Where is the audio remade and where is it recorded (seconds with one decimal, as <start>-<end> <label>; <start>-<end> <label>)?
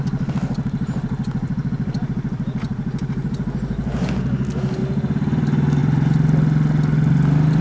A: 0.0-7.6 recorded